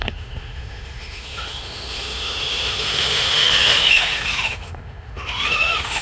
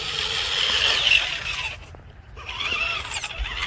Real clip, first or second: second